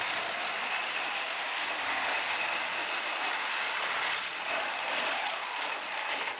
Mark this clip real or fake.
real